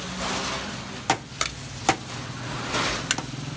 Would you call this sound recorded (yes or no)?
yes